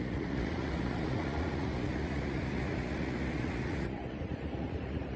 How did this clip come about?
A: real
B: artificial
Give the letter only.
B